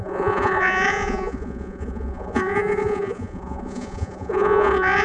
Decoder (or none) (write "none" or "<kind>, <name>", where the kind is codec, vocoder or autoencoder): vocoder, Vocos